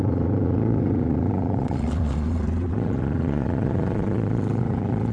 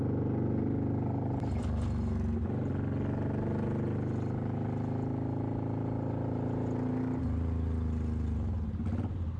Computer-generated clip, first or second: first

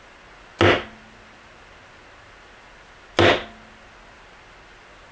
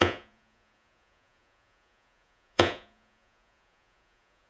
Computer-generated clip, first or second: second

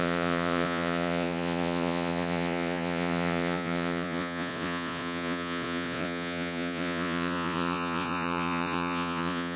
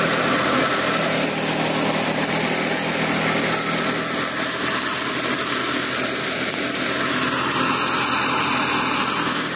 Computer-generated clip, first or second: first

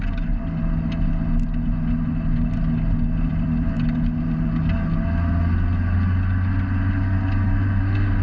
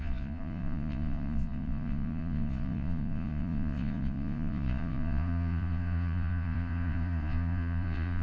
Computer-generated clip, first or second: second